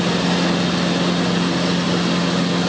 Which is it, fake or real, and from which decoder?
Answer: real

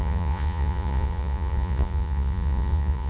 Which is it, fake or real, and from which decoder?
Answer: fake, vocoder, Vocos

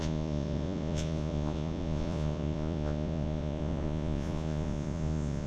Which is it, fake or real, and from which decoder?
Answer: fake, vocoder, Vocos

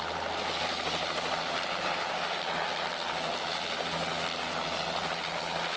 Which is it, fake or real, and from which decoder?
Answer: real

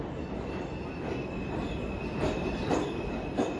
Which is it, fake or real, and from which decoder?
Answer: real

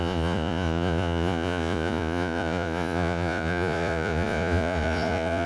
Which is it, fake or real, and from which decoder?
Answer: fake, vocoder, Vocos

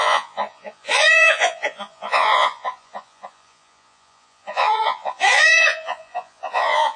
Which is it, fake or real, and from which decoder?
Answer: fake, vocoder, Vocos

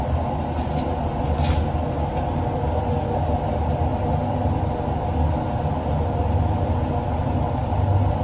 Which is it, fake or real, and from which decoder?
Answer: real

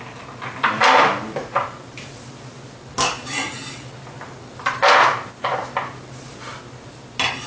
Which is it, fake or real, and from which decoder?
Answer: real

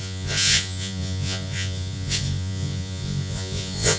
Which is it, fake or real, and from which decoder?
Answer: fake, vocoder, Vocos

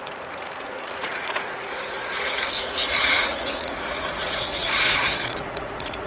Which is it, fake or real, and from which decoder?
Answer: fake, vocoder, Vocos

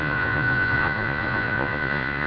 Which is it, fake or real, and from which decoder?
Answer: fake, vocoder, Vocos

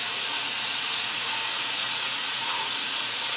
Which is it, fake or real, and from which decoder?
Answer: fake, vocoder, Vocos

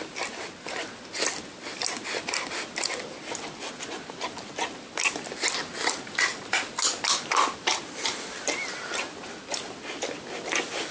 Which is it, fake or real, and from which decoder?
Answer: real